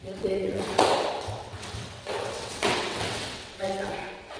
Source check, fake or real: fake